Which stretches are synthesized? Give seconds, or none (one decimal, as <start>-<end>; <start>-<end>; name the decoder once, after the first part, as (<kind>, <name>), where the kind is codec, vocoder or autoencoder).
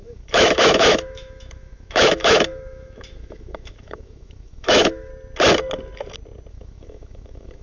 0.0-5.1 (autoencoder, DAC-VAE); 6.5-7.6